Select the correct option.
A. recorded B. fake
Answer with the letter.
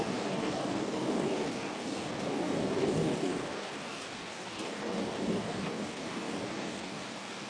B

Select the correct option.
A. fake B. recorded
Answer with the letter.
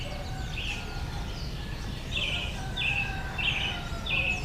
B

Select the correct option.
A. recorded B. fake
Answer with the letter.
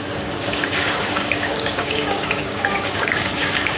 B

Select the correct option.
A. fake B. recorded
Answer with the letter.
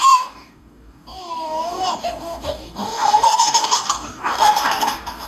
A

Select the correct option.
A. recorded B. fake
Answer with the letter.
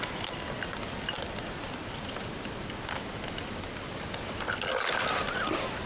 A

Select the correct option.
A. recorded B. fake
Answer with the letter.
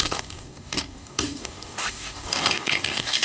B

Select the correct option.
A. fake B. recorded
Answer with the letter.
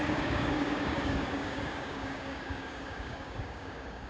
A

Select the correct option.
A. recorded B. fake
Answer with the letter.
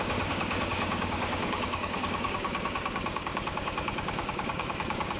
B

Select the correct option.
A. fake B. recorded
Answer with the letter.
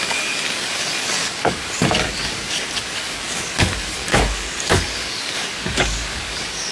A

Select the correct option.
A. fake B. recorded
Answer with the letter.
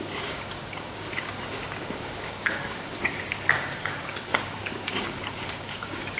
A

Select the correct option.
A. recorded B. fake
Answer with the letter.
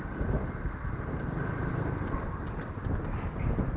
A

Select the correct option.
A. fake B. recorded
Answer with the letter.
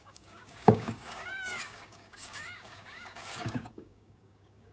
A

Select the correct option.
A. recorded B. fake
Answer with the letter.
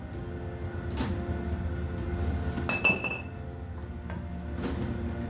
A